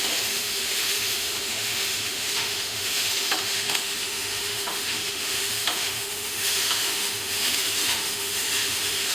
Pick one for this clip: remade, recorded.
remade